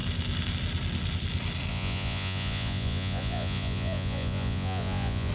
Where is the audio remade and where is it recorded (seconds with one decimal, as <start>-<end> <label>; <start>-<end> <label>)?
0.0-1.7 recorded; 1.7-5.3 remade